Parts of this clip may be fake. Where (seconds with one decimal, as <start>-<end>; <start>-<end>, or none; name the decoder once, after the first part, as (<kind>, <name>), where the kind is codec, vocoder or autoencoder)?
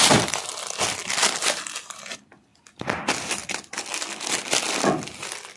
none